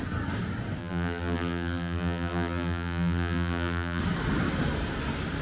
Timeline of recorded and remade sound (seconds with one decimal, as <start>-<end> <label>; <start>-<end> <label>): 0.0-0.8 recorded; 0.8-4.0 remade; 4.0-5.4 recorded